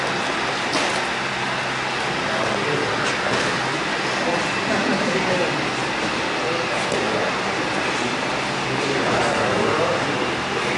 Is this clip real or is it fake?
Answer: real